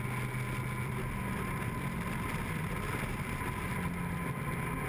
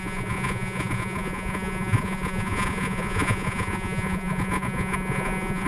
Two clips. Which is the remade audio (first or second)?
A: second